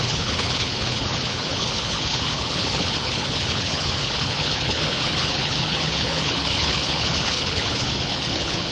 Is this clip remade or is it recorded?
remade